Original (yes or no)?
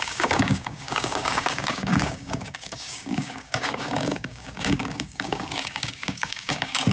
no